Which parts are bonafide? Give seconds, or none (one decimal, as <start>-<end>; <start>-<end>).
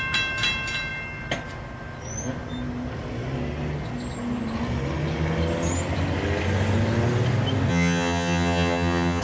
0.0-7.7